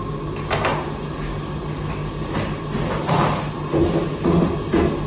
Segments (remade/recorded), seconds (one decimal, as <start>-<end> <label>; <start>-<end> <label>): 0.0-5.1 recorded